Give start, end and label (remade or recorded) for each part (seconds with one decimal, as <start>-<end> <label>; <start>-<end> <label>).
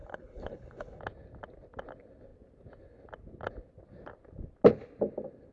0.0-1.0 remade; 1.0-5.5 recorded